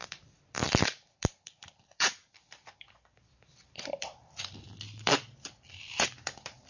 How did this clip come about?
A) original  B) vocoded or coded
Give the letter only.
B